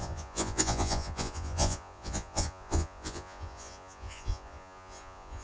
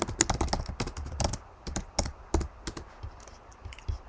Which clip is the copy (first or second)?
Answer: first